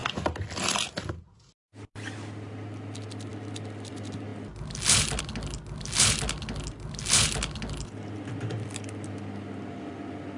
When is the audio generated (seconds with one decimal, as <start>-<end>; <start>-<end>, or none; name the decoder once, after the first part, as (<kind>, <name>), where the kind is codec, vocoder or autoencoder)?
none